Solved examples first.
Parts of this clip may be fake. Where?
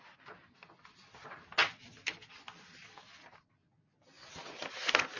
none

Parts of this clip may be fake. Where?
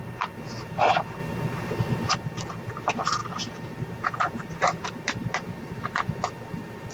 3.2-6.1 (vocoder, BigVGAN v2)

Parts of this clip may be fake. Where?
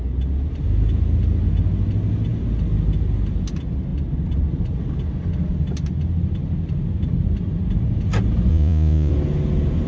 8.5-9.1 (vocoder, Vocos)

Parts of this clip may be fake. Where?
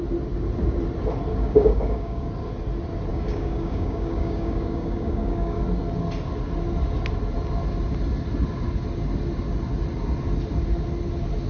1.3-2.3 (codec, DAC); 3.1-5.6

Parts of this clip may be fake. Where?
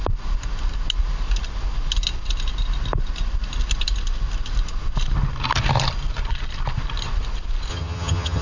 7.7-8.4 (vocoder, HiFi-GAN)